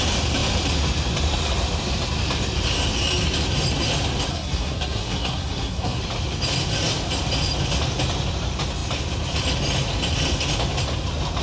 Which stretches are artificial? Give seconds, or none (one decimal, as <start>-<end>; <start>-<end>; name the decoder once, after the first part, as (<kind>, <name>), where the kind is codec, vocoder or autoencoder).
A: 4.3-6.0 (codec, SNAC)